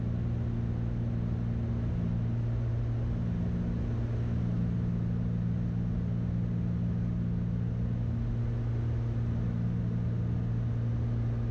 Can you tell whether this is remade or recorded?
recorded